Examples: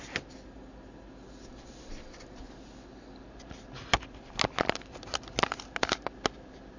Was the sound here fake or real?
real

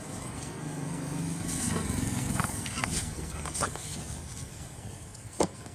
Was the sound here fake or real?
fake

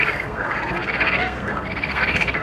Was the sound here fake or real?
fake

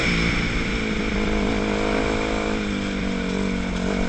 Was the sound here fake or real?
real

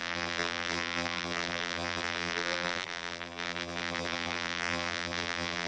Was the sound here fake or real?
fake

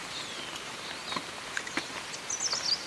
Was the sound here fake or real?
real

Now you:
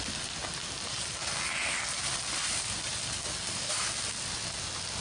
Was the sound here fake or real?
real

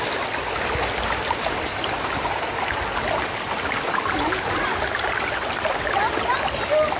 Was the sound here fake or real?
real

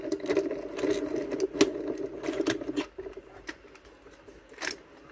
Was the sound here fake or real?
real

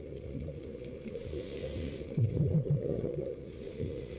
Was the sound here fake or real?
fake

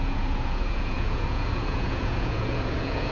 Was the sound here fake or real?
fake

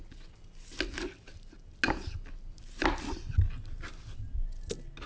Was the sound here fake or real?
real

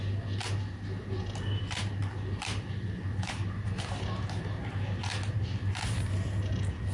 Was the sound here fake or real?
real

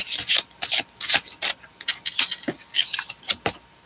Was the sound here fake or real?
real